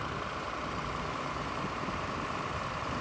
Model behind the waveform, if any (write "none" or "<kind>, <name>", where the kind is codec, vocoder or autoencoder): vocoder, BigVGAN v2